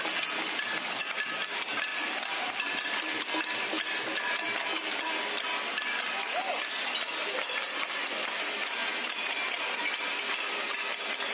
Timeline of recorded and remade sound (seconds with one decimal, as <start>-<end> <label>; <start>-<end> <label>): 0.0-1.9 recorded; 1.9-2.5 remade; 2.5-11.3 recorded